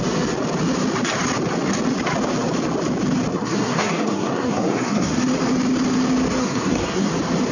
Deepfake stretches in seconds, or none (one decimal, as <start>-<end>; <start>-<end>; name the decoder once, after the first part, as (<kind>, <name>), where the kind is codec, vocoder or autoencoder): 3.3-5.2 (codec, SNAC); 6.4-7.1